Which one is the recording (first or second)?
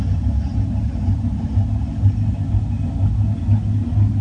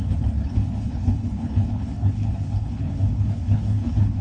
first